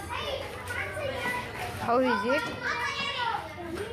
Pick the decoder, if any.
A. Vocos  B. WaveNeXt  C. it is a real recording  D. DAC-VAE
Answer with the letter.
C